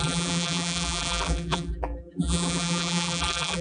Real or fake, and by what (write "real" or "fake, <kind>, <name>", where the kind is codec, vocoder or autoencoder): fake, vocoder, BigVGAN v2